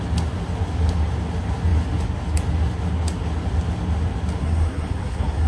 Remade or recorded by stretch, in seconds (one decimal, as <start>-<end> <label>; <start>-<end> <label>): 0.0-4.4 recorded; 4.4-5.5 remade